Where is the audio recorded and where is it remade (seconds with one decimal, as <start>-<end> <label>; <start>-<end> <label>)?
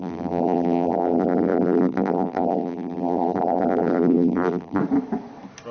0.0-4.8 remade; 4.8-5.7 recorded